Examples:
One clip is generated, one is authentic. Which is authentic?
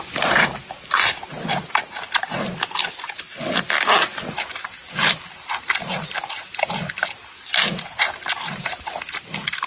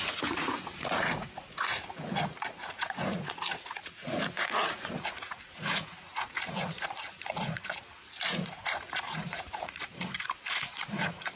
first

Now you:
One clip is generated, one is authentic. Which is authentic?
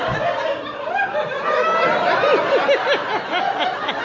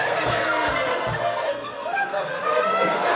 first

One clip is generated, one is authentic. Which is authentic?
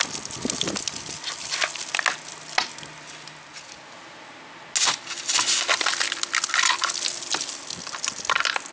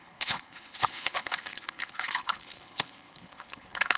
first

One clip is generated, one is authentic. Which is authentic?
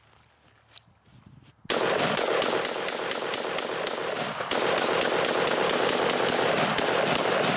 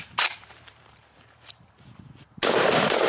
first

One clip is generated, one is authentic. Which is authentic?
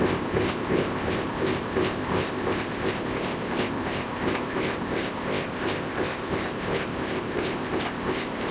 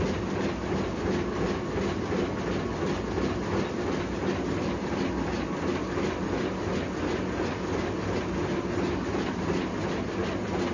second